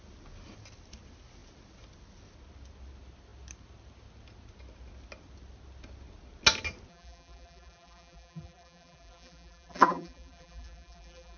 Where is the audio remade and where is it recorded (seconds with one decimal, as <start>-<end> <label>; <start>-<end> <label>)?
0.0-6.9 recorded; 6.9-11.4 remade